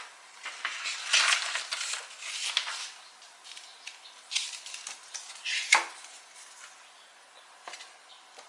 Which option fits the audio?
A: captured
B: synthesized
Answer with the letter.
A